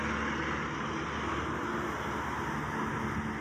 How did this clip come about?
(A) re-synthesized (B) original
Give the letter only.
B